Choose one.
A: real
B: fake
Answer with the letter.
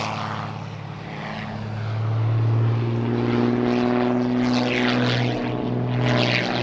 A